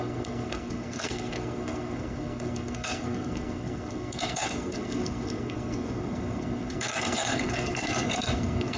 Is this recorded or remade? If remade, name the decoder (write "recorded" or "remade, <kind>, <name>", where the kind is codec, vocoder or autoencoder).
remade, codec, SNAC